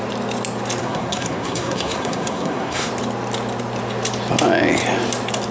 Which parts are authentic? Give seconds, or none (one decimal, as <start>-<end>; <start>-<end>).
0.0-0.8; 2.9-5.5

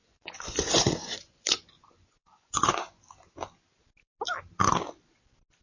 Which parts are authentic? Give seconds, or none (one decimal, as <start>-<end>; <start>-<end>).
3.0-5.6

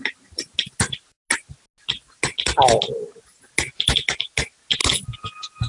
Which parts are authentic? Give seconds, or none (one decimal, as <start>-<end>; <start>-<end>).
0.0-5.7

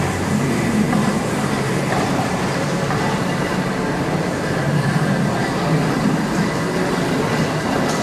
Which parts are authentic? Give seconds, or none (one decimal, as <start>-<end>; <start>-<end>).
0.0-1.0; 4.9-8.0

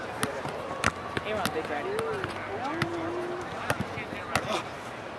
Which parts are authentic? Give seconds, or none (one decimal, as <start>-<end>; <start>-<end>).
0.0-5.2

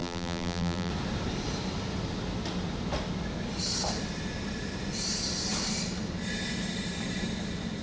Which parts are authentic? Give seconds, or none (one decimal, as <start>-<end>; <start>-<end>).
0.9-7.8